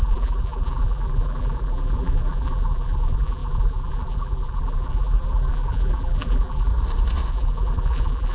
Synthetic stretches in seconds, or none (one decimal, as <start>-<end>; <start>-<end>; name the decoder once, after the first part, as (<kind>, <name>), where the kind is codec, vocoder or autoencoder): 0.0-6.7 (vocoder, BigVGAN v2); 7.3-8.3